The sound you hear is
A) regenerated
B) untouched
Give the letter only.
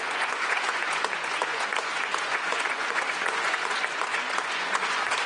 A